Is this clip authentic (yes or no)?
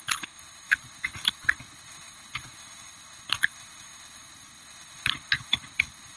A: no